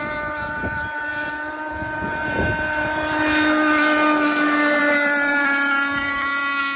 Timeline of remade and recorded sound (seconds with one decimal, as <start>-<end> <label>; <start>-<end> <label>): 0.0-6.8 recorded